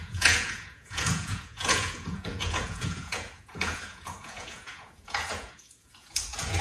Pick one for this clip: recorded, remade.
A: remade